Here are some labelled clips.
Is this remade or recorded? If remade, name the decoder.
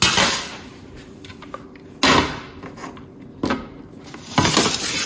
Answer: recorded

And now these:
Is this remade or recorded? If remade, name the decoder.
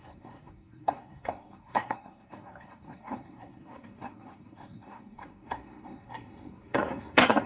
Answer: remade, codec, SNAC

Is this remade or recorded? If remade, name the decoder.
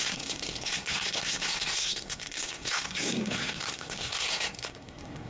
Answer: remade, codec, SNAC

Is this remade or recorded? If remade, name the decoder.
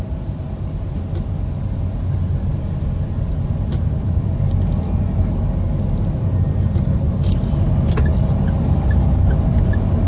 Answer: recorded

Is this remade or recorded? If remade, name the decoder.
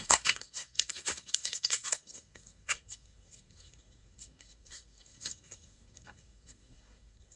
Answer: remade, codec, SNAC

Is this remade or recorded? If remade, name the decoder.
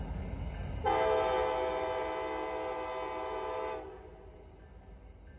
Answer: recorded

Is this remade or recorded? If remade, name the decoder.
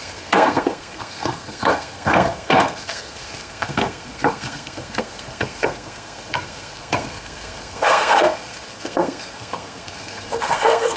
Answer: remade, codec, SNAC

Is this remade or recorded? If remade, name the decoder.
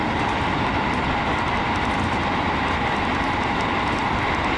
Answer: recorded